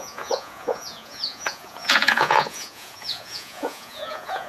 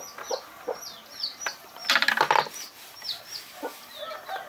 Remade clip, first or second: first